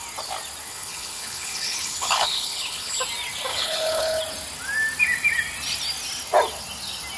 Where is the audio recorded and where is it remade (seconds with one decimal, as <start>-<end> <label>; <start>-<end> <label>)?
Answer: 0.0-0.7 recorded; 0.7-3.0 remade; 3.0-3.5 recorded; 3.5-4.2 remade; 4.2-7.2 recorded